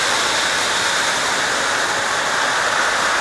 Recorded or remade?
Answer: recorded